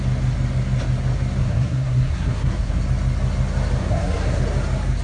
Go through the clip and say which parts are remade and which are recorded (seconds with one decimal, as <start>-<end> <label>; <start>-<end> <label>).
0.0-1.4 recorded; 1.4-2.8 remade; 2.8-3.8 recorded; 3.8-4.4 remade; 4.4-5.0 recorded